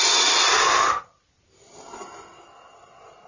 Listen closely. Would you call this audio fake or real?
real